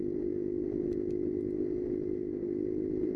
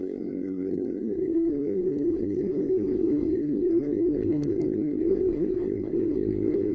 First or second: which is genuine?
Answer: first